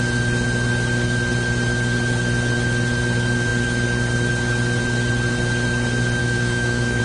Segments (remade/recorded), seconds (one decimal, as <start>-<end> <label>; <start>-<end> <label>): 0.0-6.2 recorded; 6.2-7.0 remade